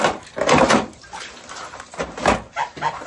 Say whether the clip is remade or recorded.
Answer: recorded